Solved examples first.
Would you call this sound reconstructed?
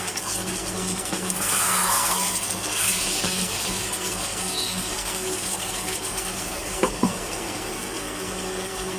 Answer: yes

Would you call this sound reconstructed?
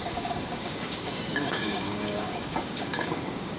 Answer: yes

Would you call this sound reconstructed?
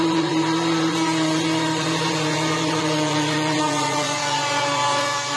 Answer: yes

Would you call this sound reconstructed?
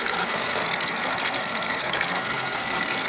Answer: yes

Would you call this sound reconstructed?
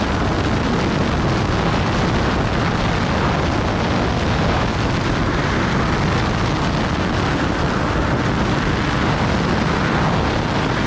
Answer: no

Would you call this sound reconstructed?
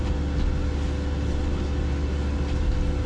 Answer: no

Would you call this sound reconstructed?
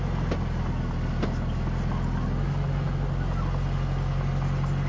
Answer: no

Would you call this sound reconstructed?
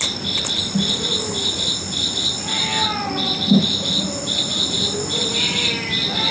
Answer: no